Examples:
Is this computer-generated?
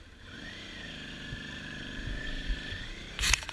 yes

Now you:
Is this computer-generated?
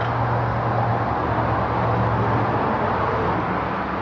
no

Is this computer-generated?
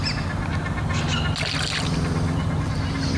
no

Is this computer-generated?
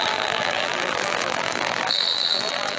yes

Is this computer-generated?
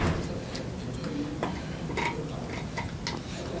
no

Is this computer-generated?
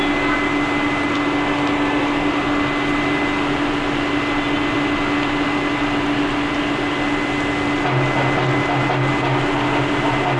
no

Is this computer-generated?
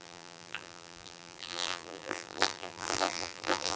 yes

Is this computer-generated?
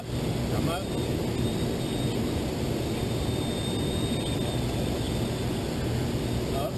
no